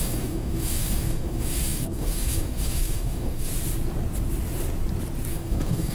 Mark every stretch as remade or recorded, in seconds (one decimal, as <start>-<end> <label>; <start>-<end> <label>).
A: 0.0-3.5 remade; 3.5-5.3 recorded; 5.3-5.9 remade